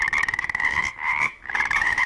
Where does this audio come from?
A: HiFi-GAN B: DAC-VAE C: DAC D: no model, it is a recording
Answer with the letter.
B